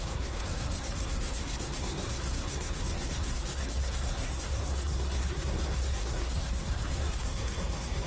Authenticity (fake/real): fake